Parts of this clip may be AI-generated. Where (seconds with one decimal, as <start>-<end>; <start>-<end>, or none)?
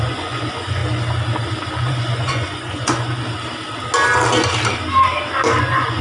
0.0-0.8; 1.8-3.2; 5.6-6.0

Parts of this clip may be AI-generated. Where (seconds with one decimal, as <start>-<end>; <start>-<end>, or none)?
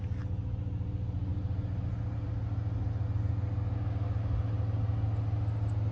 none